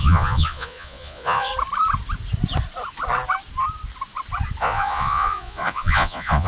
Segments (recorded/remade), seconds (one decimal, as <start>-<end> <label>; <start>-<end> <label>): 0.0-1.5 remade; 1.5-4.6 recorded; 4.6-6.5 remade